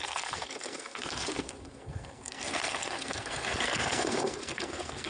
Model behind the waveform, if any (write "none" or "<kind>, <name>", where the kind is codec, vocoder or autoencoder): codec, SNAC